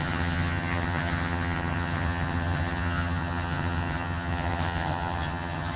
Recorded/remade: remade